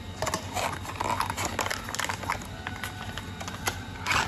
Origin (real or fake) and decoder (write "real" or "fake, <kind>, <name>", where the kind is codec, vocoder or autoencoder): real